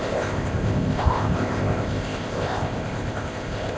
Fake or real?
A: fake